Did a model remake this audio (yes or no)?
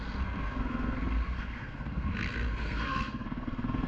yes